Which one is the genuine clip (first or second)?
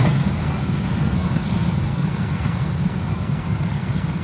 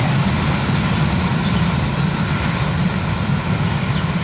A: second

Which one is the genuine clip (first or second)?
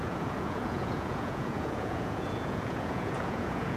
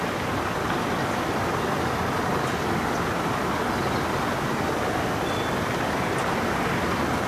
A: second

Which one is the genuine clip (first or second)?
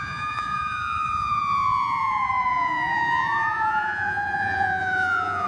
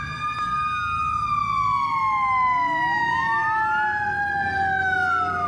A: second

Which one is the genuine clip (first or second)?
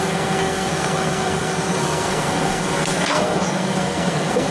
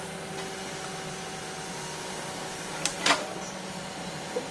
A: second